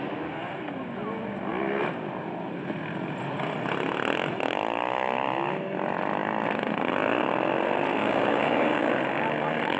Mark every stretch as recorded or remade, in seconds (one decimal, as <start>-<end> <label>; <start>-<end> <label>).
0.0-8.0 recorded; 8.0-8.9 remade; 8.9-9.8 recorded